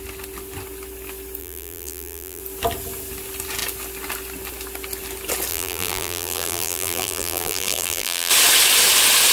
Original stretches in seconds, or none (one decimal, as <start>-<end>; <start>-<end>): 0.0-1.4; 2.4-5.5; 8.3-9.3